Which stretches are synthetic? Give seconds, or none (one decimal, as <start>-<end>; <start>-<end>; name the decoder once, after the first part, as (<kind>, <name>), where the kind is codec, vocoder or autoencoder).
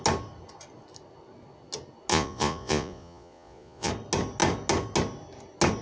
2.1-3.9 (vocoder, Vocos)